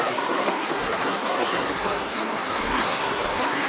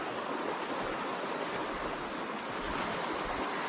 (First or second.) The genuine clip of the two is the second